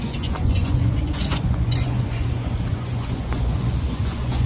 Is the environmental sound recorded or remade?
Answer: remade